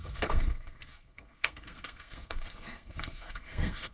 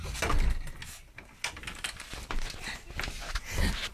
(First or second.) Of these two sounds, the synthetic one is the first